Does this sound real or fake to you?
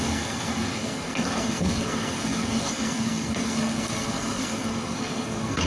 fake